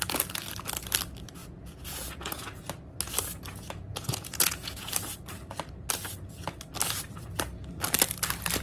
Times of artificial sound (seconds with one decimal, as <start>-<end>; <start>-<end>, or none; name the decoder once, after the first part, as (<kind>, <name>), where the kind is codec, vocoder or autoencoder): 1.4-2.6 (vocoder, Vocos); 3.9-4.9